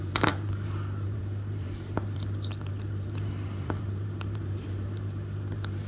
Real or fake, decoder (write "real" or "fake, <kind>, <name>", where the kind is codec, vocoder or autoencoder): fake, vocoder, BigVGAN v2